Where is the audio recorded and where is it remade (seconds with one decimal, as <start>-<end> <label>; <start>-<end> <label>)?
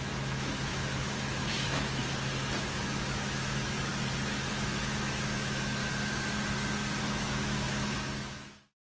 0.0-2.0 remade; 2.0-2.6 recorded; 2.6-3.9 remade; 3.9-4.5 recorded; 4.5-5.8 remade; 5.8-7.0 recorded; 7.0-8.9 remade